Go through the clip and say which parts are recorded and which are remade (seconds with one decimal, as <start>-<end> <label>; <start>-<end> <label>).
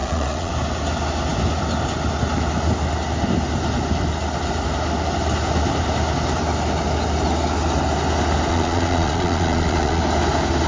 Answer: 0.0-0.5 remade; 0.5-8.5 recorded; 8.5-10.0 remade; 10.0-10.7 recorded